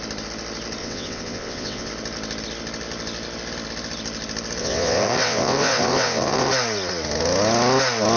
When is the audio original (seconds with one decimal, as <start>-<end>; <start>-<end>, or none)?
0.0-0.8; 1.9-4.6; 6.5-8.2